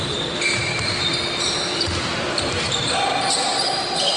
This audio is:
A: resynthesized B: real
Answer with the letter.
A